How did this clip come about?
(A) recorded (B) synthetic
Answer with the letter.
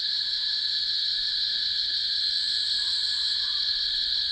B